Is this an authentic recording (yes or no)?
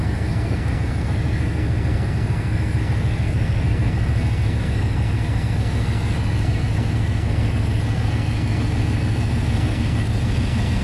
no